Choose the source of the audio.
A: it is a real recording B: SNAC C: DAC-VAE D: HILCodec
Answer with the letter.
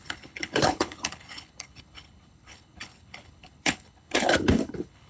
D